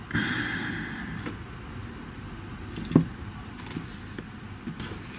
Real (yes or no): yes